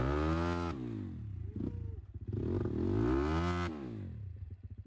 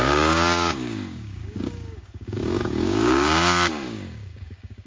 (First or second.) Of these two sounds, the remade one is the second